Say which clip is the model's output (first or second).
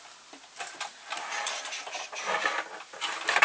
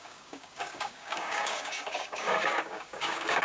second